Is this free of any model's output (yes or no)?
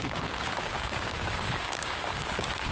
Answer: no